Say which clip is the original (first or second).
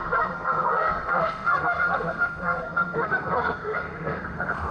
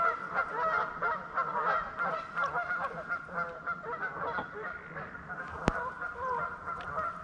second